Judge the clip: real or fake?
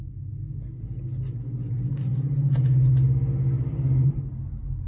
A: real